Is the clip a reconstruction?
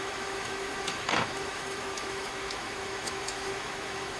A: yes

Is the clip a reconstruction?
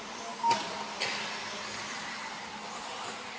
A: no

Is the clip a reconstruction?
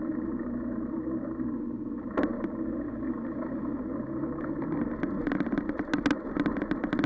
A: no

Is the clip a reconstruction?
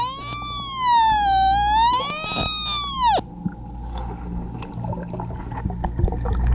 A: no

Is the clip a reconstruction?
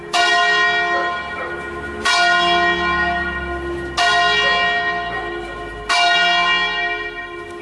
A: no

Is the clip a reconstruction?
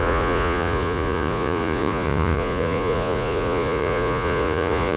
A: yes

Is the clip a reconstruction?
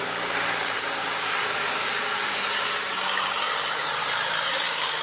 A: yes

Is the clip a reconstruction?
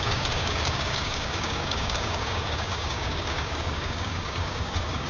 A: yes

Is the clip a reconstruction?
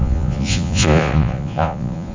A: yes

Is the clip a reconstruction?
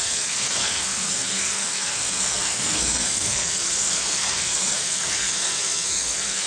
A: yes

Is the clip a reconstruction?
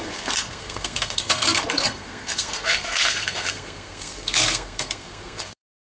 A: yes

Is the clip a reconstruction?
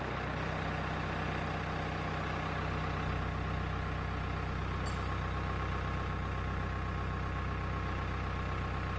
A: no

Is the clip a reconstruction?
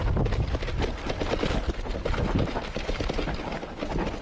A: no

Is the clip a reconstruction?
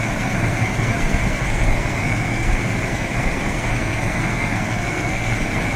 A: yes